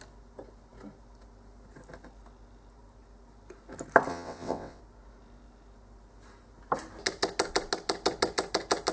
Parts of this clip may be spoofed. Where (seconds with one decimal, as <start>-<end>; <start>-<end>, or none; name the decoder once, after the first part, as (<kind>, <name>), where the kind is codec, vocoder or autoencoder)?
4.1-4.8 (vocoder, WaveNeXt)